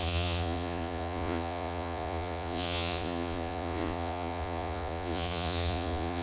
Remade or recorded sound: remade